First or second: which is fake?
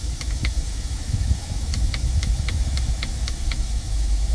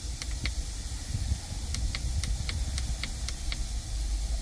first